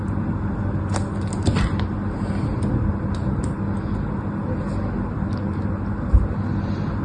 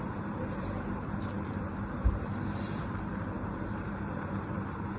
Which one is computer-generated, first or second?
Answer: second